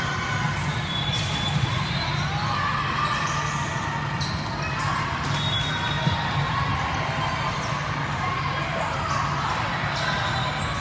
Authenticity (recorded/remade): recorded